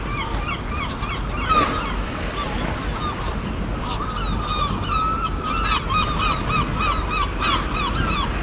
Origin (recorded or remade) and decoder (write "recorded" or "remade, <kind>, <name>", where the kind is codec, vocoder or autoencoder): recorded